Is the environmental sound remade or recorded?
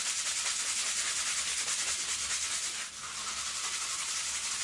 recorded